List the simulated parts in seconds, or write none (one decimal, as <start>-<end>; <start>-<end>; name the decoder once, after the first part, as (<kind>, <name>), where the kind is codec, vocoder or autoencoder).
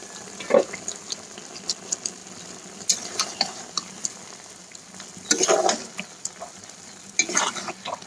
none